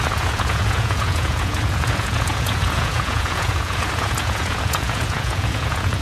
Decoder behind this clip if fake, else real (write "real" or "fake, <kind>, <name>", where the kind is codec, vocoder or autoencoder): fake, vocoder, Vocos